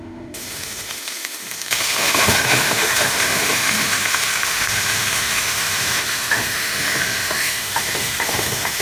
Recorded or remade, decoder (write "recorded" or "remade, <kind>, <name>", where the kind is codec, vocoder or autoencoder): remade, autoencoder, DAC-VAE